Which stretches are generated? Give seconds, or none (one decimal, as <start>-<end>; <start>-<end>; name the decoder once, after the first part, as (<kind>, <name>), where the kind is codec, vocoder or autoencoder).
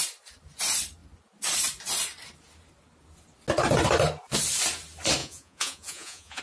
5.2-6.4 (vocoder, Vocos)